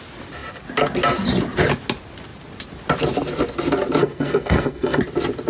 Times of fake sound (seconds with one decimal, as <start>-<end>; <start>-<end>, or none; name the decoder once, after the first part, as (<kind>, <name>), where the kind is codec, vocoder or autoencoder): 4.0-5.0 (codec, SNAC)